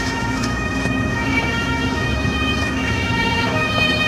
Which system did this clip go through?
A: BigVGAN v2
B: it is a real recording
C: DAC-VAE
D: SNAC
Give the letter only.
C